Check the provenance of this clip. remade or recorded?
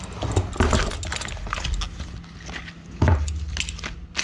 recorded